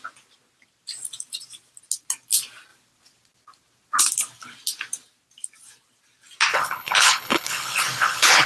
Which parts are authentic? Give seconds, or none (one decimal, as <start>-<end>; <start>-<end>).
0.0-6.5